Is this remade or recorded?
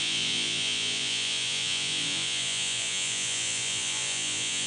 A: remade